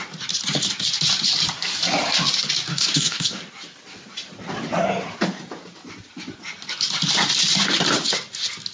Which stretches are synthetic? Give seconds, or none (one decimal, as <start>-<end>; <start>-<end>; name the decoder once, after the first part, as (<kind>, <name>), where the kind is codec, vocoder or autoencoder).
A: 2.7-3.4 (codec, DAC)